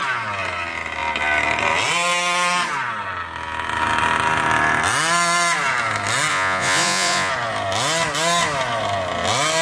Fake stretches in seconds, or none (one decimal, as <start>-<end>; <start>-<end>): 6.3-7.3